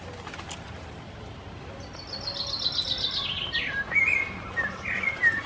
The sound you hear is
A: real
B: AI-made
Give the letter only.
A